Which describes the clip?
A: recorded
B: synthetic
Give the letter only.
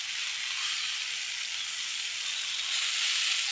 A